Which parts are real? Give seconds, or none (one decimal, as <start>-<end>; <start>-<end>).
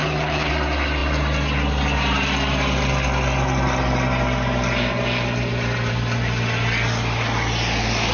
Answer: 0.5-8.1